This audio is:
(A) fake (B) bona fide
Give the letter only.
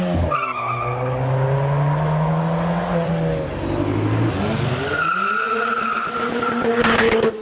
B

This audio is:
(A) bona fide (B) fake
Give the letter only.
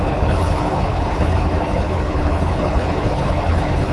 B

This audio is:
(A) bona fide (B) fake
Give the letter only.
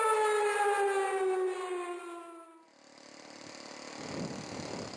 A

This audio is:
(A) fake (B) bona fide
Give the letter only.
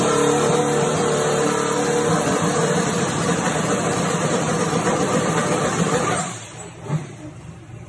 A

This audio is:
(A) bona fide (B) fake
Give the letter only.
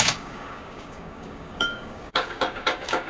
B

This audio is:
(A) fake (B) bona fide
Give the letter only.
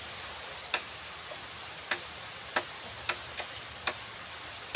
B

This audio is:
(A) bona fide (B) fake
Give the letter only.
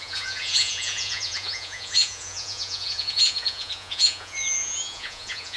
B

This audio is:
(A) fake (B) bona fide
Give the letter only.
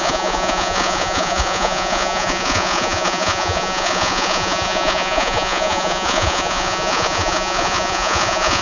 A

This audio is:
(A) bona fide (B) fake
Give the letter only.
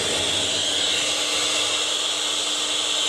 A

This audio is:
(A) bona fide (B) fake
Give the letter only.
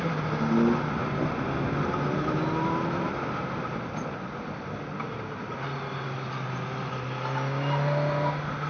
A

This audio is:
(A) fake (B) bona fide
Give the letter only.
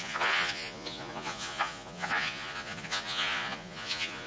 A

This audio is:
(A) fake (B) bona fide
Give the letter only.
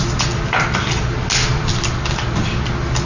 B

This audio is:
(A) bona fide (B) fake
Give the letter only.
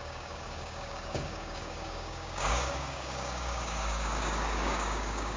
B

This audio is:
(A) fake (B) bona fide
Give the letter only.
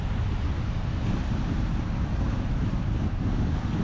B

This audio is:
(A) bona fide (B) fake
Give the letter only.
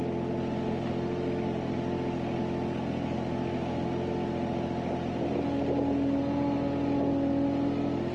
A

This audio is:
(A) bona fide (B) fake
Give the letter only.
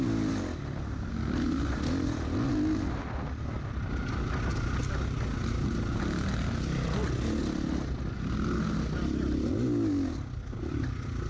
A